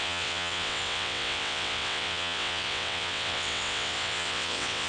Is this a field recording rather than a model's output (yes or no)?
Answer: no